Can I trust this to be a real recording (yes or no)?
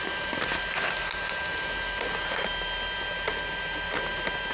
yes